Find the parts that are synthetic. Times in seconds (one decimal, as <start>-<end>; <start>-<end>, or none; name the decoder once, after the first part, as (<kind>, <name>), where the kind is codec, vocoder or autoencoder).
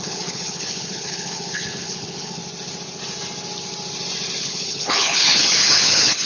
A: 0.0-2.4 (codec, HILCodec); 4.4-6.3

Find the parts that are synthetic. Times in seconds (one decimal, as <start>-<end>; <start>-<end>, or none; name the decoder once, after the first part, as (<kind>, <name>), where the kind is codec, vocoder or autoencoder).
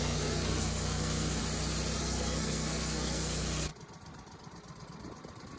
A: 0.0-1.4 (codec, SNAC); 2.0-3.7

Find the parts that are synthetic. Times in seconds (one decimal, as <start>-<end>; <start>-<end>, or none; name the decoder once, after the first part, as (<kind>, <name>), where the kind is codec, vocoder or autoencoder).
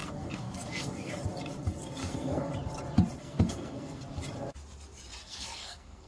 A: 0.0-1.1 (codec, SNAC); 2.0-2.5; 3.2-4.0; 5.2-6.1